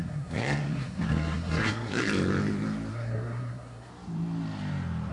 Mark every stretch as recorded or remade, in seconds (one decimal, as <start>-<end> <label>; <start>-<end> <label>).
0.0-2.0 remade; 2.0-2.9 recorded; 2.9-3.9 remade; 3.9-5.1 recorded